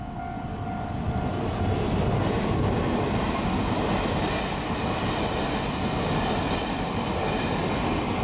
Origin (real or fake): real